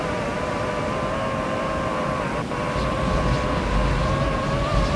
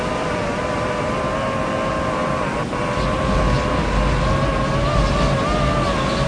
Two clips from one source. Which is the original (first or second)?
second